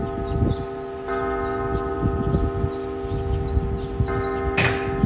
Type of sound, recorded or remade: recorded